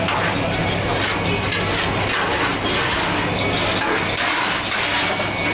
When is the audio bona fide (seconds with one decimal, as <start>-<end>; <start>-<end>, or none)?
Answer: 0.0-5.5